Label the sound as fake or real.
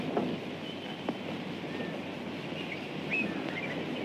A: real